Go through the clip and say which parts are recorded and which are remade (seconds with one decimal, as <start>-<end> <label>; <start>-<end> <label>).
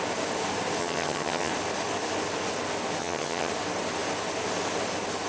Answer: 0.0-0.8 recorded; 0.8-1.5 remade; 1.5-3.0 recorded; 3.0-3.5 remade; 3.5-5.3 recorded